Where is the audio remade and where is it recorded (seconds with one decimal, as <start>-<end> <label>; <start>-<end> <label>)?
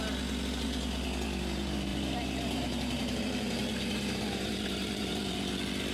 0.0-1.9 recorded; 1.9-5.4 remade; 5.4-5.9 recorded